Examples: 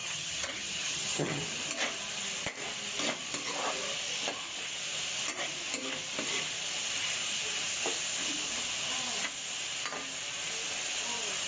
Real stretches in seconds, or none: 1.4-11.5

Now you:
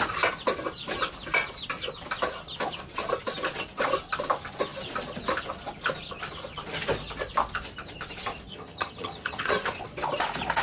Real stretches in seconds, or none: 0.0-8.5; 9.6-10.6

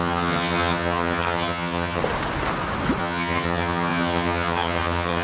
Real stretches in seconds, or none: 2.0-3.0

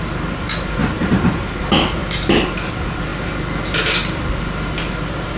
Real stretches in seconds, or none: 0.0-5.4

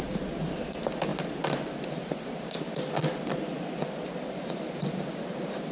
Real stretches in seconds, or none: 0.0-5.7

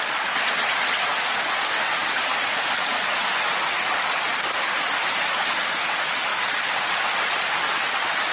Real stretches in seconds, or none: 0.0-8.3